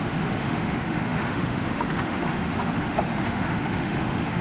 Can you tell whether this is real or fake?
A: fake